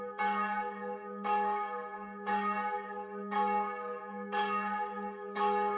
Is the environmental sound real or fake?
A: fake